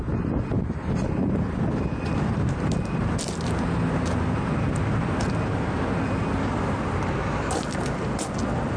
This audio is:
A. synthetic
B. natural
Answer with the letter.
B